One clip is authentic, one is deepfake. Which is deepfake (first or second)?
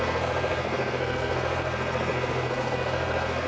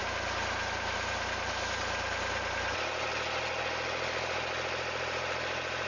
first